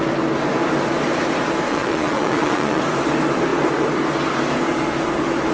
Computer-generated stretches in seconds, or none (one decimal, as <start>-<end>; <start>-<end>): 1.7-2.8